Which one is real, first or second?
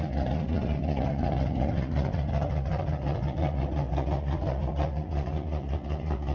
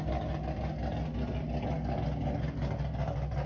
second